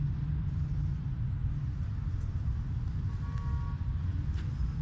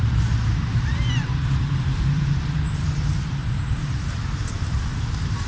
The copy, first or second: second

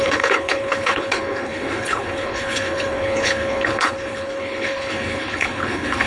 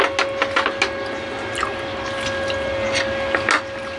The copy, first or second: first